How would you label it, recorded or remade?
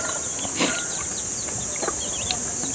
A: recorded